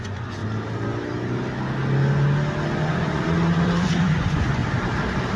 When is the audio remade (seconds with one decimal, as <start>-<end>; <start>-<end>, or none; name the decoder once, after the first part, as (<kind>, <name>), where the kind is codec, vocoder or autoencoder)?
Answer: 0.0-0.4 (vocoder, Vocos); 2.9-4.6